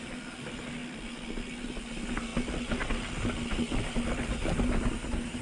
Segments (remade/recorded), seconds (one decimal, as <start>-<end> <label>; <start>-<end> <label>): 0.0-5.4 recorded